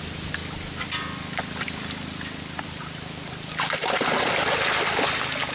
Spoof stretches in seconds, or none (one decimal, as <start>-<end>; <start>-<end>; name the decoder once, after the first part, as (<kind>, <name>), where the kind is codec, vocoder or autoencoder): none